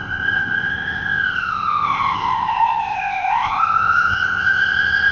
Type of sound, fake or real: fake